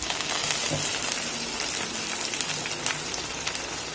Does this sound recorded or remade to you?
recorded